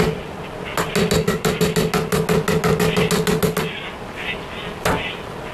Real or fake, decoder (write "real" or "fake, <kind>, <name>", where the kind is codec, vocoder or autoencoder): real